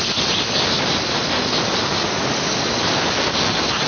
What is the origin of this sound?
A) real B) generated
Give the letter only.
A